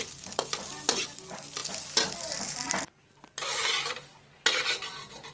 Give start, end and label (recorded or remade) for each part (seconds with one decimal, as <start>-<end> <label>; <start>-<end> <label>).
0.0-5.3 recorded